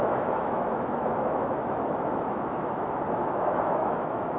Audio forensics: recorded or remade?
remade